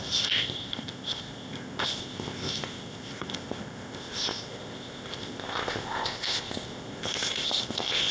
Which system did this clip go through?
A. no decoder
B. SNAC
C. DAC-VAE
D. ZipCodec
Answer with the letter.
D